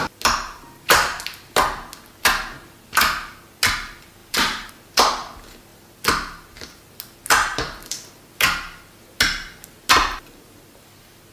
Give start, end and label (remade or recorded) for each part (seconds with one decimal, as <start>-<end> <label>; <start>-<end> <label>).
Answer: 0.0-4.2 recorded; 4.2-4.7 remade; 4.7-11.3 recorded